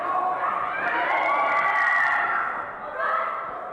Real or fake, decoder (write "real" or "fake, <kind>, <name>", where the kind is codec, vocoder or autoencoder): real